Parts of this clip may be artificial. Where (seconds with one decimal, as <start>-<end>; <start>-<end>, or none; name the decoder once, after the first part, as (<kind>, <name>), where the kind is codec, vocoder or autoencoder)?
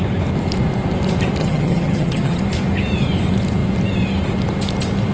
1.4-2.4 (vocoder, HiFi-GAN)